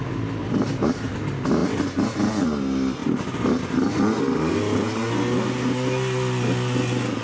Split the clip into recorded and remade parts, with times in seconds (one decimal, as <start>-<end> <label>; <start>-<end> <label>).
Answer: 0.0-0.4 recorded; 0.4-1.1 remade; 1.1-7.2 recorded